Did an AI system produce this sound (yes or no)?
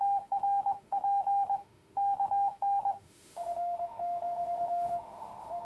yes